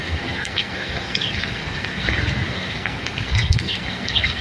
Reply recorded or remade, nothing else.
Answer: remade